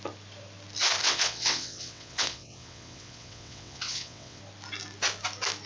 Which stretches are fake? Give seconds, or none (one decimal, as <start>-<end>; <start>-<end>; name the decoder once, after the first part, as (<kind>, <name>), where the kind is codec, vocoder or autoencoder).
1.0-4.4 (vocoder, WaveNeXt)